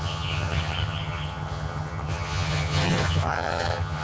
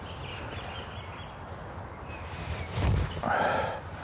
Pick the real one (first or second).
second